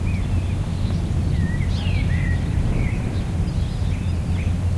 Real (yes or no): yes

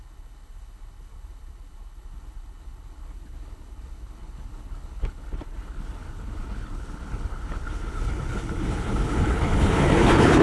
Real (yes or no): no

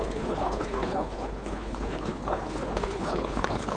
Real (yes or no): no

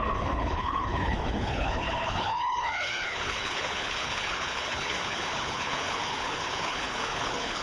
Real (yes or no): no